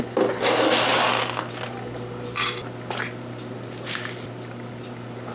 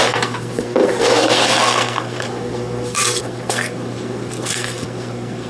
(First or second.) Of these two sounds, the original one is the first